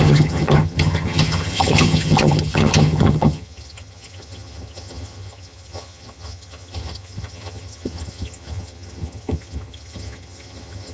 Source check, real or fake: fake